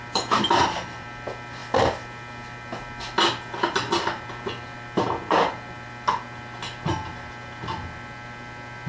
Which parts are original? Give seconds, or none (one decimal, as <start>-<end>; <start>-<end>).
0.0-8.9